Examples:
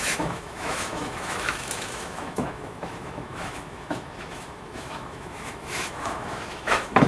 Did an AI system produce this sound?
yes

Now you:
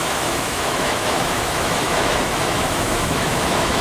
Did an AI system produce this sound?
yes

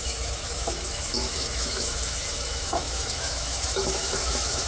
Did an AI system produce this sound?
yes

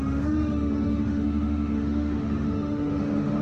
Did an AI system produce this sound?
yes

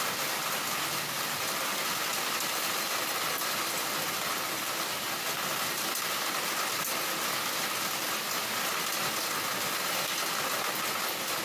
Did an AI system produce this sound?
no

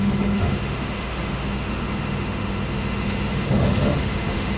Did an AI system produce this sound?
yes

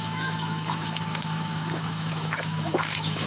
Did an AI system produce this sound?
yes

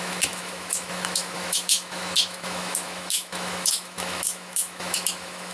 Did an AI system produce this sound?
yes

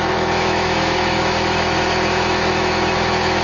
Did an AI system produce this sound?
yes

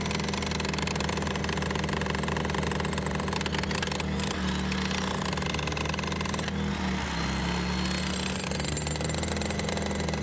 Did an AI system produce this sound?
no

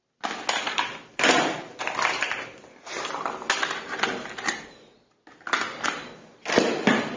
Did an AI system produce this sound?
no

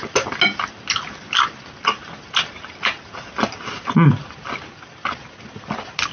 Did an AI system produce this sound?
no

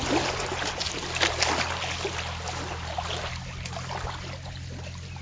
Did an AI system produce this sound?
no